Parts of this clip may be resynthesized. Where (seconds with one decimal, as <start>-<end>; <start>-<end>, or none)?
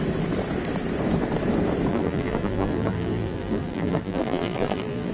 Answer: 1.9-5.1